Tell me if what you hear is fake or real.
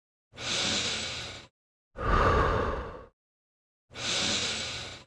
real